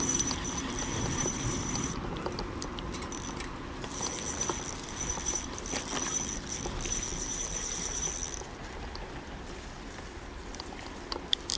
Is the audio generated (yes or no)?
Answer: yes